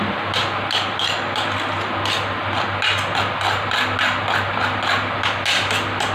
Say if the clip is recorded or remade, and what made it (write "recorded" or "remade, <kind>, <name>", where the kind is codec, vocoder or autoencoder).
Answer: recorded